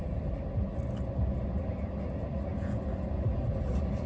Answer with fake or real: real